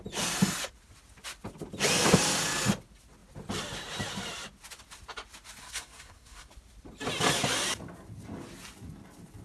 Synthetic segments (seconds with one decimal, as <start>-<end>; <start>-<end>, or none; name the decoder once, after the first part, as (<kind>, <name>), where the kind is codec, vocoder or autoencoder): 5.6-6.5 (codec, SNAC)